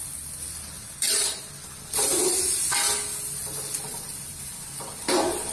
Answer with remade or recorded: recorded